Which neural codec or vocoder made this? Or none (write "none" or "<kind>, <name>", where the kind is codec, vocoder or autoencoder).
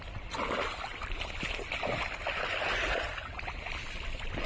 none